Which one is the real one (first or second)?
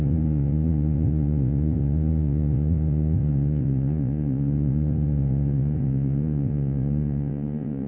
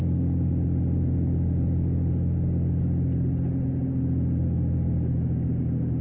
second